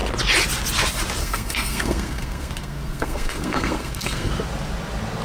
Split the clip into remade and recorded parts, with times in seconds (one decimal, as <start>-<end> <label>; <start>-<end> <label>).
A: 0.0-1.2 recorded; 1.2-4.3 remade; 4.3-5.2 recorded